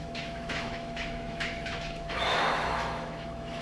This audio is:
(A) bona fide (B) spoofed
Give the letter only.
B